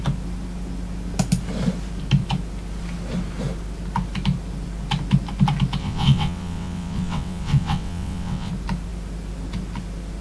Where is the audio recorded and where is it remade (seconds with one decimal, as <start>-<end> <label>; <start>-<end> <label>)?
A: 0.0-5.8 recorded; 5.8-8.5 remade; 8.5-10.2 recorded